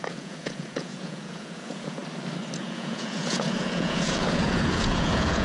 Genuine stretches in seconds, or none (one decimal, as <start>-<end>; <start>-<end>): 2.0-2.6